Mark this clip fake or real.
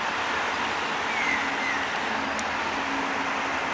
real